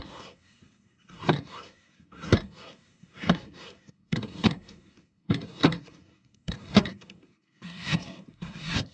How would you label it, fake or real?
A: fake